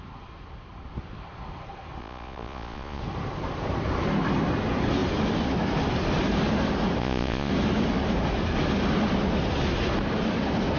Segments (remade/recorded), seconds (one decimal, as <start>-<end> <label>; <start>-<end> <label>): 0.0-2.0 recorded; 2.0-3.0 remade; 3.0-7.0 recorded; 7.0-7.5 remade; 7.5-10.8 recorded